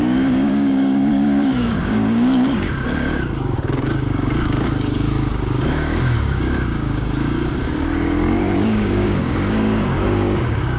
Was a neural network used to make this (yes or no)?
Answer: yes